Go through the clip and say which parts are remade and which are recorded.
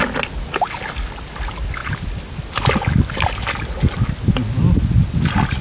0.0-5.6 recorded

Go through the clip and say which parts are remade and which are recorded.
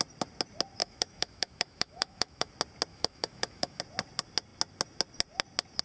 0.0-0.8 recorded; 0.8-2.5 remade; 2.5-2.9 recorded; 2.9-3.8 remade; 3.8-5.8 recorded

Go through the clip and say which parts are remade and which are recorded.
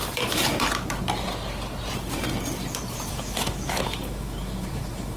0.0-3.1 recorded; 3.1-5.2 remade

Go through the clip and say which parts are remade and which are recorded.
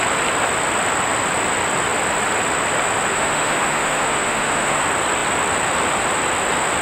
0.0-3.1 recorded; 3.1-4.8 remade; 4.8-6.8 recorded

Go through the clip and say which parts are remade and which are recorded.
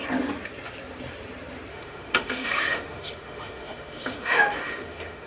0.0-1.7 recorded; 1.7-5.3 remade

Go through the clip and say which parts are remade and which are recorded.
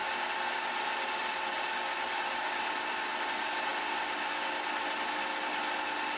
0.0-6.2 recorded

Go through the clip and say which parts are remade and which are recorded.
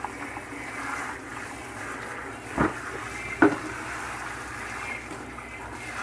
0.0-6.0 recorded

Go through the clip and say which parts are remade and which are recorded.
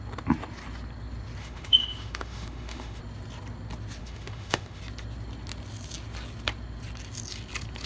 0.0-1.4 recorded; 1.4-3.0 remade; 3.0-4.0 recorded; 4.0-4.8 remade; 4.8-7.9 recorded